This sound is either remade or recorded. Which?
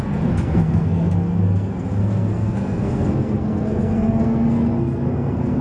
remade